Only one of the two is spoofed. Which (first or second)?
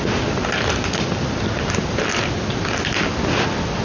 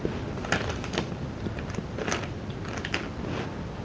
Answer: second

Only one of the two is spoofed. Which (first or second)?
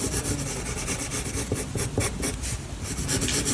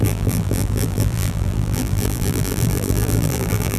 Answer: second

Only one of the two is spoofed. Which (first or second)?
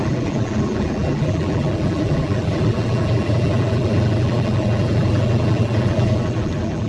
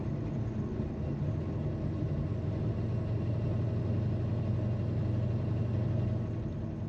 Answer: first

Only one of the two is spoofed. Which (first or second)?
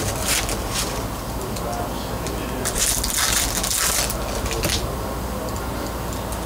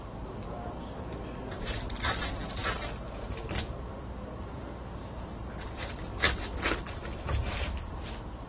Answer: second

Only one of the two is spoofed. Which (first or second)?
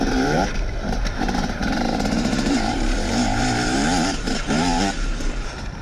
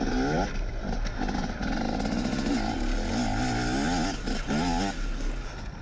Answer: first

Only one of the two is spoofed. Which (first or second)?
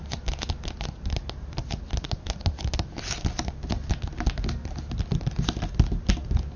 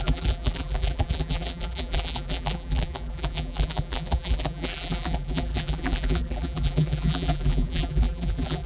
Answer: second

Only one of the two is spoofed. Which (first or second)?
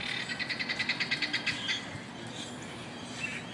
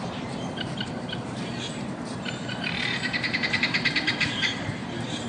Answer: second